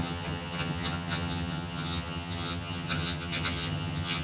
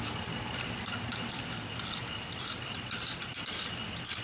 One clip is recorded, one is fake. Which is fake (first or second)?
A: first